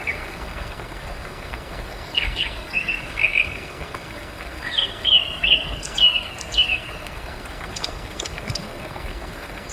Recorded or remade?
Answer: remade